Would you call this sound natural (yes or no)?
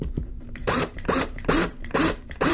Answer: no